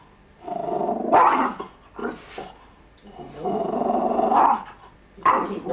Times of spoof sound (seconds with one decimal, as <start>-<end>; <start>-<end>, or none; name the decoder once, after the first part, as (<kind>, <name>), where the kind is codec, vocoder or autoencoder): 2.0-5.7 (vocoder, BigVGAN v2)